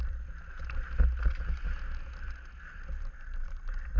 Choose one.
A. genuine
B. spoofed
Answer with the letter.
A